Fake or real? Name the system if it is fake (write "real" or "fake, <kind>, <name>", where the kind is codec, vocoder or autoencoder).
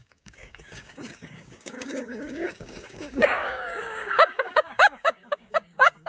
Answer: fake, codec, DAC